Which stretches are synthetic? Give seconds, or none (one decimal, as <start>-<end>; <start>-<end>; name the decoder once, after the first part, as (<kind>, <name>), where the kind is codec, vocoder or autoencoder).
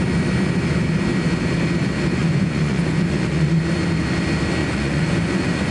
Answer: 2.2-3.6 (vocoder, Vocos); 4.6-5.7